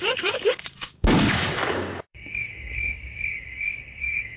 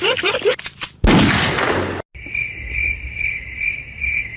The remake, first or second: first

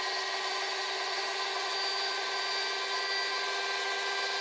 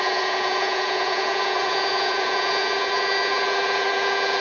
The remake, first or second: second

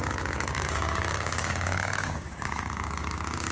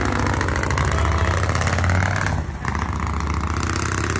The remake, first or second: first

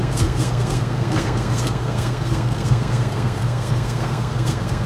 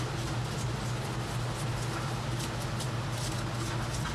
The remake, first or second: first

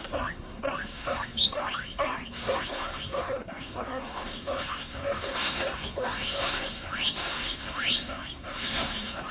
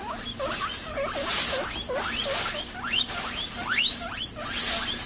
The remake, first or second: first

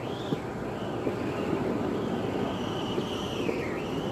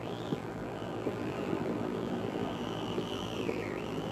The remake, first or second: second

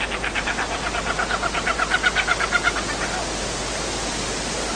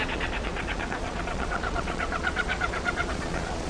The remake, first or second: second